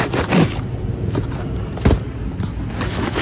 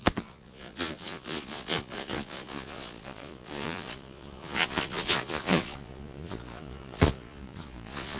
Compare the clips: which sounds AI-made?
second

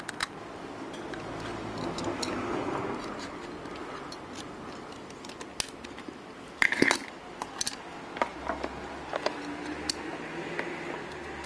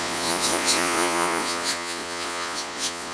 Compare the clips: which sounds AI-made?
second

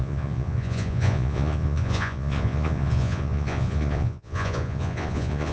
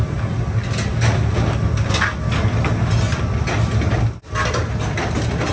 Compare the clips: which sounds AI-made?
first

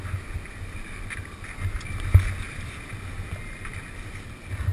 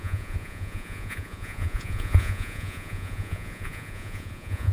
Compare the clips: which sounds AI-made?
second